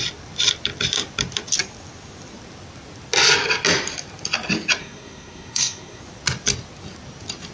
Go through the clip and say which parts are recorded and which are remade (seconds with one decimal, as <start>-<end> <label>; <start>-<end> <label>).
0.0-4.8 recorded; 4.8-6.0 remade; 6.0-7.5 recorded